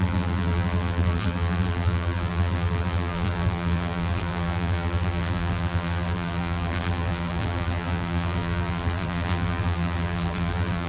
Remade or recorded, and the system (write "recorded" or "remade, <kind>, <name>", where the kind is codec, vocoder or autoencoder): remade, vocoder, BigVGAN v2